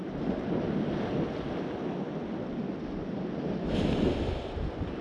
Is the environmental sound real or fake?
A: real